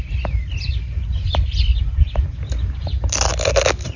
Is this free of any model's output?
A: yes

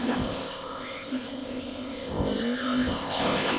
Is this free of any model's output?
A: no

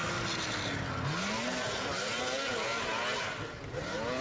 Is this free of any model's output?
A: yes